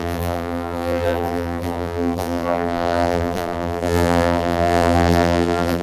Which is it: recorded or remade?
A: remade